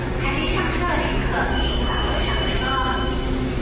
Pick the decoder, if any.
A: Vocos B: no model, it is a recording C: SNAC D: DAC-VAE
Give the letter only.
D